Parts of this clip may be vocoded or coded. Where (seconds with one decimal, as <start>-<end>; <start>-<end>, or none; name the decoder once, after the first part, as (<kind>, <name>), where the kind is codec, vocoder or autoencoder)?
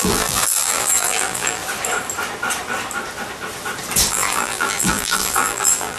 0.0-1.6 (vocoder, BigVGAN v2); 4.1-6.0